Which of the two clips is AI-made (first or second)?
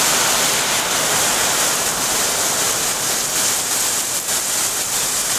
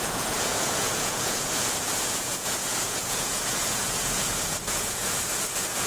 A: second